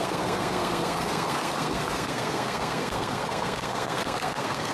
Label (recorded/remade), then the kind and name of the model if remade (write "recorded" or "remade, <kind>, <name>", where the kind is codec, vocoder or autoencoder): remade, codec, SNAC